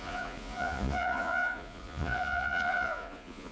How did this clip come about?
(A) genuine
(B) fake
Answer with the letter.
B